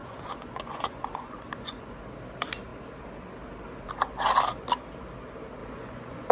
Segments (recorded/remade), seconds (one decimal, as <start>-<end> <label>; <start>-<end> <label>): 0.0-2.0 remade; 2.0-5.6 recorded; 5.6-6.3 remade